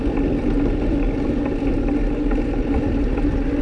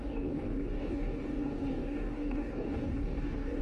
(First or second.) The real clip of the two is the first